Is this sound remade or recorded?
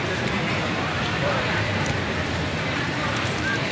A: remade